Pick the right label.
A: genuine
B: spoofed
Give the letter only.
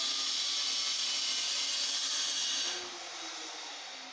A